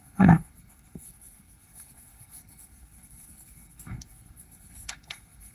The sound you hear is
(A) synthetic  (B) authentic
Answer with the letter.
A